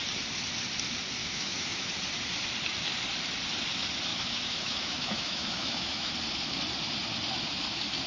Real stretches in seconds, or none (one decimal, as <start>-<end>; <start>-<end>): 0.0-1.2; 1.9-4.1; 6.1-8.1